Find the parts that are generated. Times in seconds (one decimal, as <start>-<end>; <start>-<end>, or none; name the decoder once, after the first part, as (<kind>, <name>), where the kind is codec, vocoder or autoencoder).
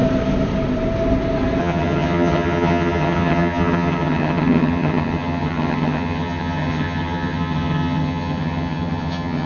1.6-9.5 (vocoder, HiFi-GAN)